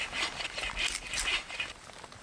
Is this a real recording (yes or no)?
yes